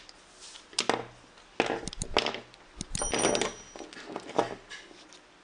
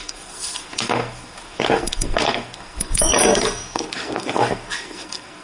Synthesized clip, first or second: second